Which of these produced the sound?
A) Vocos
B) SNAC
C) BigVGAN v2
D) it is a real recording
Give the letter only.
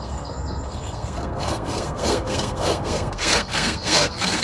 B